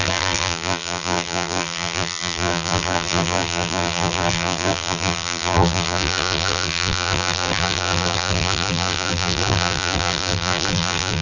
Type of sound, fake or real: fake